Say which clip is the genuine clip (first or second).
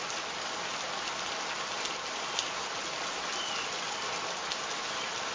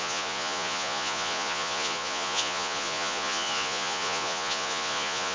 first